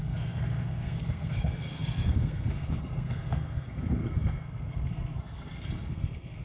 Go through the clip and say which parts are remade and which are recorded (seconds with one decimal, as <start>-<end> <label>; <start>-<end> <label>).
0.0-6.4 remade